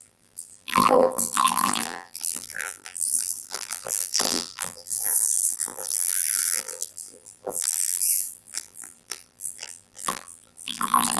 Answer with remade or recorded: remade